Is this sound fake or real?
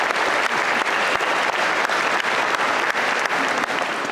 real